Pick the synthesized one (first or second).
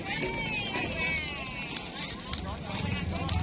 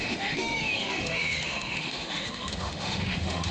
second